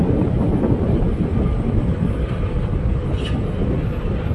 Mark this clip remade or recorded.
recorded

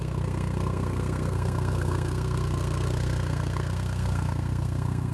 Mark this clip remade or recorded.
remade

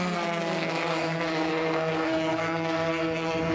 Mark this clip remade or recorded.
remade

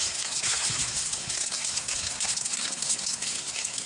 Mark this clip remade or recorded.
remade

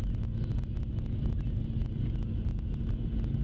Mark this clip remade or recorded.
recorded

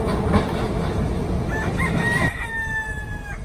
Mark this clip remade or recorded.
recorded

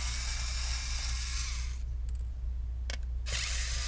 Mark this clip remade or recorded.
recorded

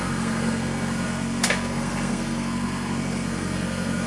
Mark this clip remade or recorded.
remade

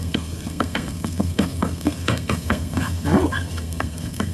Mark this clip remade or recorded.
remade